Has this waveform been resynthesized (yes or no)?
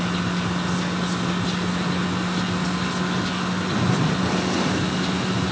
no